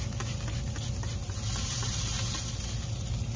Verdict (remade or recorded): recorded